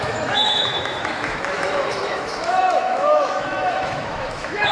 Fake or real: fake